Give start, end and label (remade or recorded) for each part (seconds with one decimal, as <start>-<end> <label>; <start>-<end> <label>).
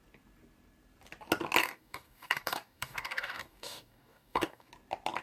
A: 0.0-1.6 recorded; 1.6-4.7 remade; 4.7-5.2 recorded